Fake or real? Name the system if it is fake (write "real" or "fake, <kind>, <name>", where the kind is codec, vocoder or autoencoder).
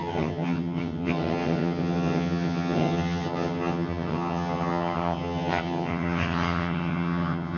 fake, vocoder, HiFi-GAN